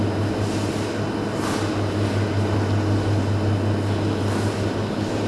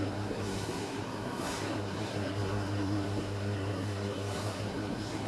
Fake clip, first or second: second